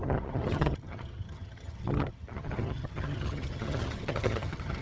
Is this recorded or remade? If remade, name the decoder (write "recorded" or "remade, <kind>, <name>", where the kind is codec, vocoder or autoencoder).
remade, vocoder, HiFi-GAN